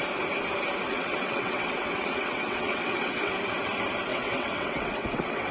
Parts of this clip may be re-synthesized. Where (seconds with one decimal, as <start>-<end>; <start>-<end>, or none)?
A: 0.9-3.3; 4.1-5.5